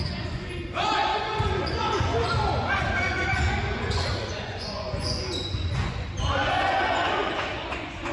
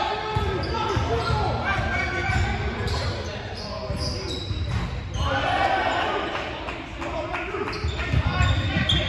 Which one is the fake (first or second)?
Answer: first